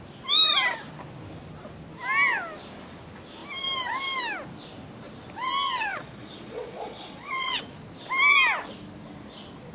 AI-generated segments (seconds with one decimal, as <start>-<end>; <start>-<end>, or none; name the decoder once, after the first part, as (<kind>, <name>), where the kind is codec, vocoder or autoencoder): 5.9-7.6 (vocoder, Vocos)